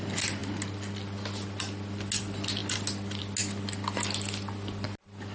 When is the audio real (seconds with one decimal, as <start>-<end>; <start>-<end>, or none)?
0.0-5.3